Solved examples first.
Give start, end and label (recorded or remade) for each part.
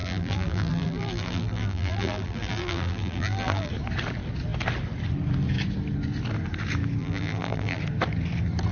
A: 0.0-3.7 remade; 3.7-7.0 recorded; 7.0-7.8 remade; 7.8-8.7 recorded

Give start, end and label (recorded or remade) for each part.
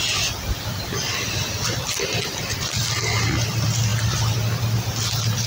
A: 0.0-3.9 recorded; 3.9-4.6 remade; 4.6-5.5 recorded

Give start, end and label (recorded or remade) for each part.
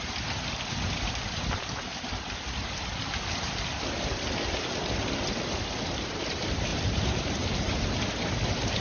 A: 0.0-6.7 recorded; 6.7-7.9 remade; 7.9-8.8 recorded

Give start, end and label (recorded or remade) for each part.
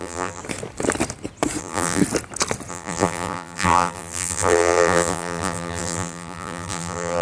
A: 0.0-0.4 remade; 0.4-1.6 recorded; 1.6-2.0 remade; 2.0-2.7 recorded; 2.7-7.2 remade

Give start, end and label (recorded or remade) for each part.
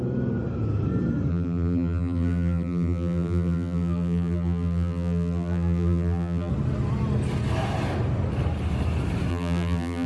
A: 0.0-1.3 recorded; 1.3-6.5 remade; 6.5-9.3 recorded; 9.3-10.1 remade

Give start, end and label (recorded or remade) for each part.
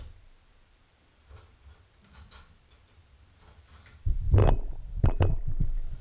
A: 0.0-6.0 remade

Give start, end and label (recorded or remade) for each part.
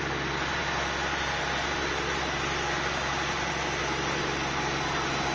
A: 0.0-5.3 recorded